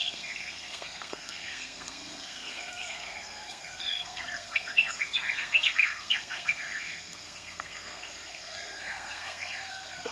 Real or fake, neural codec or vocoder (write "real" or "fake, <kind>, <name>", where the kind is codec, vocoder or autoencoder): fake, codec, SNAC